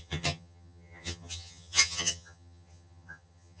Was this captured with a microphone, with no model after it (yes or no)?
no